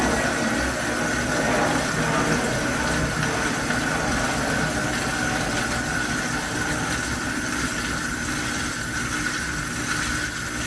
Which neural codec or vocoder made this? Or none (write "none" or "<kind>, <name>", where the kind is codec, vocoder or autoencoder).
none